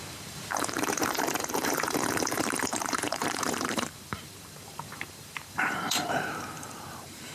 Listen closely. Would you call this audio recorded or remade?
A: remade